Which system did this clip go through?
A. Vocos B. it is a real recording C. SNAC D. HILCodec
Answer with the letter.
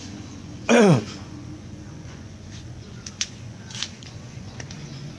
A